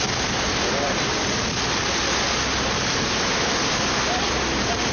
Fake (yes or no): no